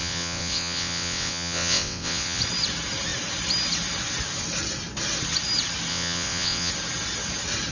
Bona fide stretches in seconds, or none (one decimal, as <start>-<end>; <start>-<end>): 2.4-5.9; 6.7-7.7